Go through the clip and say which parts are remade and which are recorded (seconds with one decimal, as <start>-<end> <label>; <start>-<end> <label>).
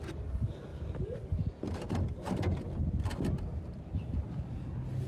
0.0-5.1 recorded